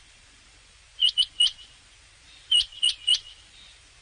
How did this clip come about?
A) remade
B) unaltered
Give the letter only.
A